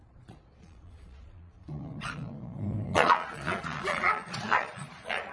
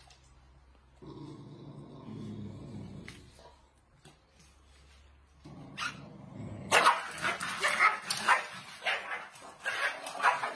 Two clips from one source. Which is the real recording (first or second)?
second